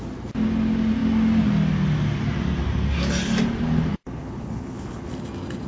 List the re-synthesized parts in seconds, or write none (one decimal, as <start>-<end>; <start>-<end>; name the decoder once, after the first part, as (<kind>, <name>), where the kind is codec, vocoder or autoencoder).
3.9-5.1 (codec, HILCodec)